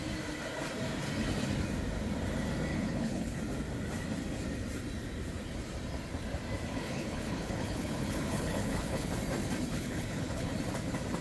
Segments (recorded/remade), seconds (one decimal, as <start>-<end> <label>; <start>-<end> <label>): 0.0-2.7 recorded; 2.7-3.4 remade; 3.4-6.7 recorded; 6.7-9.1 remade; 9.1-9.7 recorded; 9.7-10.5 remade; 10.5-11.2 recorded